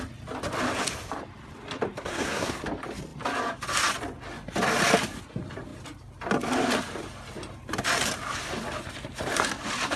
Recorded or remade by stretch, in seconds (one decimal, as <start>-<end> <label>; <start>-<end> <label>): 0.0-2.0 recorded; 2.0-2.6 remade; 2.6-10.0 recorded